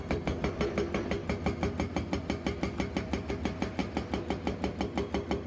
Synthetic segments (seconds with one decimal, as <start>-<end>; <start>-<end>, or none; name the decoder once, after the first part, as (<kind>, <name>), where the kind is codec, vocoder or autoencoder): 0.0-1.2 (vocoder, BigVGAN v2); 3.3-3.8